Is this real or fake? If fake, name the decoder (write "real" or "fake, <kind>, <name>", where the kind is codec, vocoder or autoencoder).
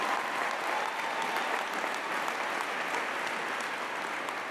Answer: real